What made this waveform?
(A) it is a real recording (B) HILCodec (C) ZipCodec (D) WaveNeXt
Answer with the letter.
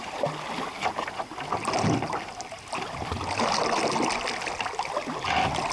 A